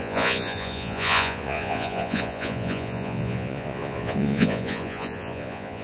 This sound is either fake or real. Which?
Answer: fake